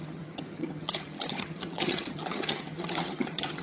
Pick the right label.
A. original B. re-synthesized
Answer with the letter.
B